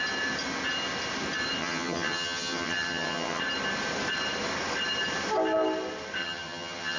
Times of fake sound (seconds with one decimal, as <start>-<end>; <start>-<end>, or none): 1.6-3.4; 6.2-7.0